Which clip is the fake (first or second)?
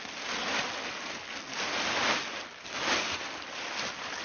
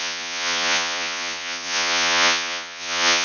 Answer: second